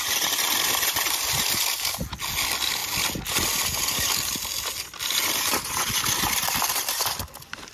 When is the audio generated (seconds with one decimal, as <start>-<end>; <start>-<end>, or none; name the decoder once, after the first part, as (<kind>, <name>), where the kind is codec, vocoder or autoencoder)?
none